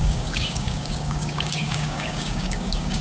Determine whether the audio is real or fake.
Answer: fake